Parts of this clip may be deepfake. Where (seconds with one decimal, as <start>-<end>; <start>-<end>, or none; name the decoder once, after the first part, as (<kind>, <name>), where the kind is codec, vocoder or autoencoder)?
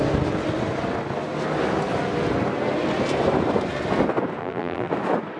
4.4-4.9 (vocoder, BigVGAN v2)